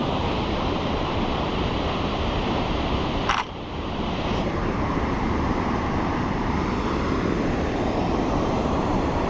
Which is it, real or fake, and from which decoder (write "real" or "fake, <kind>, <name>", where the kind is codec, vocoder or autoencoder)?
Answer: fake, vocoder, BigVGAN v2